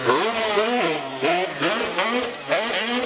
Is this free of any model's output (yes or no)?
yes